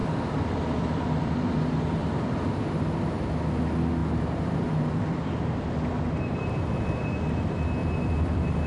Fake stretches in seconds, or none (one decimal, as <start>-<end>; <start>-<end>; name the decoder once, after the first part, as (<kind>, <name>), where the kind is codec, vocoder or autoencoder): 0.0-2.3 (vocoder, BigVGAN v2); 4.0-5.3; 7.8-8.7